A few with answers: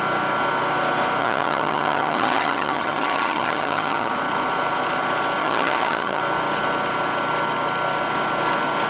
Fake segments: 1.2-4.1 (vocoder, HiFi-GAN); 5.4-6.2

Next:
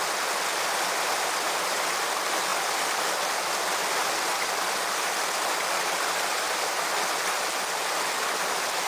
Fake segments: none

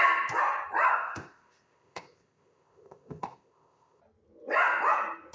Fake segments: 0.9-4.0 (codec, ZipCodec)

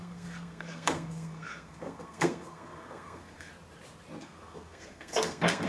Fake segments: 0.0-3.5 (codec, SNAC); 4.2-5.7

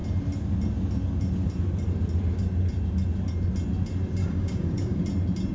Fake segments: 4.2-5.0 (codec, DAC)